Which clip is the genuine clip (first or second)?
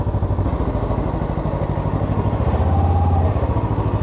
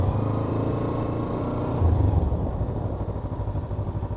first